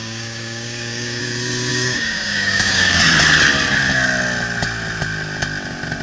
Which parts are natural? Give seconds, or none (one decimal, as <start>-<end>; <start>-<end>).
1.2-1.7; 3.0-6.0

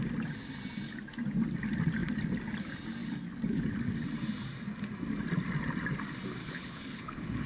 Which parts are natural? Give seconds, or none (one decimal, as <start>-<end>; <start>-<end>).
0.0-6.4

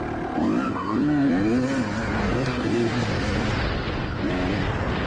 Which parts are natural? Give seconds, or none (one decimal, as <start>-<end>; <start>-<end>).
0.0-0.7; 1.3-2.2; 3.1-5.1

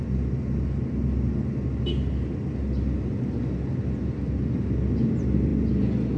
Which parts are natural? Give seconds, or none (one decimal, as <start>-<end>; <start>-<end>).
0.0-6.2